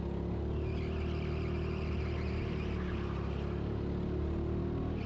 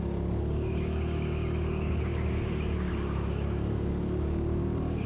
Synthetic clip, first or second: second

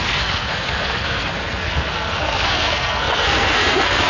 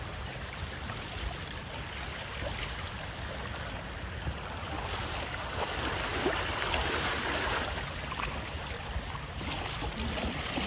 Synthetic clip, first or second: first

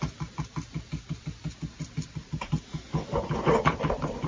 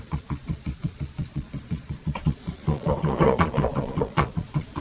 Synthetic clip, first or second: second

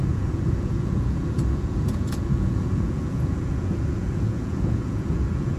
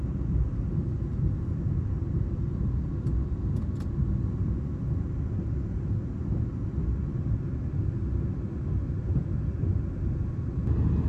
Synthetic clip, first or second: first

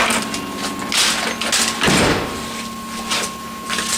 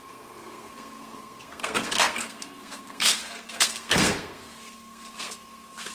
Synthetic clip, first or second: second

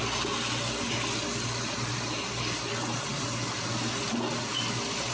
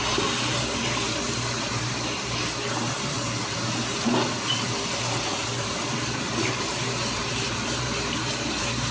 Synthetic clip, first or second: second